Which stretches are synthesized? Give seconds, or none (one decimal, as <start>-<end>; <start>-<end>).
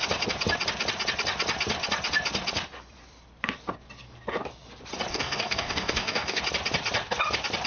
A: 5.1-6.4